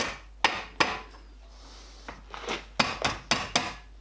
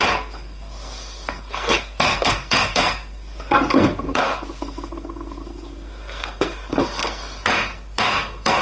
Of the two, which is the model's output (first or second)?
second